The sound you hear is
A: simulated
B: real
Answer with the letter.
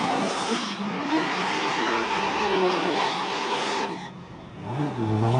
A